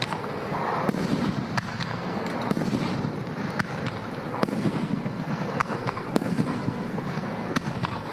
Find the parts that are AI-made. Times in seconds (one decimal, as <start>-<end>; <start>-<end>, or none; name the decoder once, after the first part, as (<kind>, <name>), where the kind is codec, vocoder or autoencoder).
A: 0.0-0.6 (codec, SNAC); 1.7-2.3; 4.3-8.1